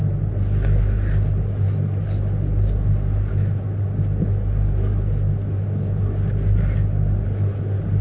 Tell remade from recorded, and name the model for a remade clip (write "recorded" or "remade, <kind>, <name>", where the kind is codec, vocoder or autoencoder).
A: recorded